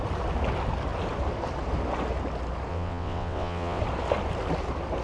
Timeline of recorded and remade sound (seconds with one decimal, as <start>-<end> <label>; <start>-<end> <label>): 0.0-2.7 recorded; 2.7-3.8 remade; 3.8-5.0 recorded